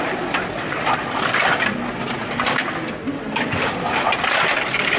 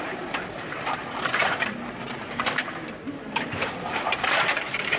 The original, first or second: first